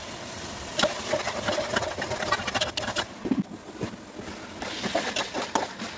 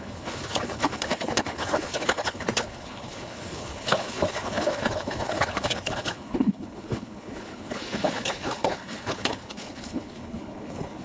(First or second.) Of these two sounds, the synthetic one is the second